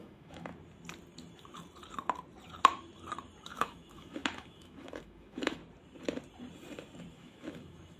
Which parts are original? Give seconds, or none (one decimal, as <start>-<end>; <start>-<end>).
0.5-3.4; 5.6-7.1